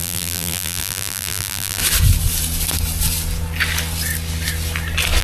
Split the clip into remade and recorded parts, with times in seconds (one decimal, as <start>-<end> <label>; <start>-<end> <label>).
0.0-1.8 remade; 1.8-5.2 recorded